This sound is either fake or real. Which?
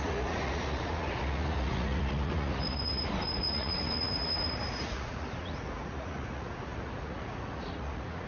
fake